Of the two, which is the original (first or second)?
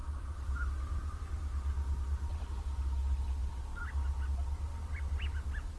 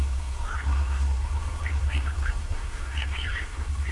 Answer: first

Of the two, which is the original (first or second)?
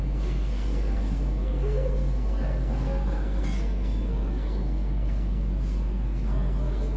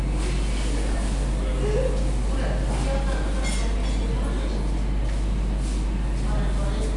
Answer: second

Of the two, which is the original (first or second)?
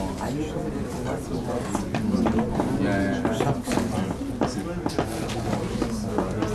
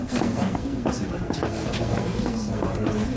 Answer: first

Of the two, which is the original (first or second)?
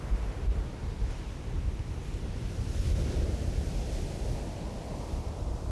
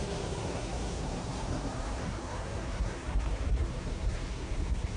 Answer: first